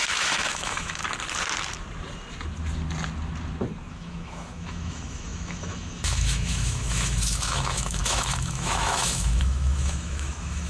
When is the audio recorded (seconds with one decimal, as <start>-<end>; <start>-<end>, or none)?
1.0-3.9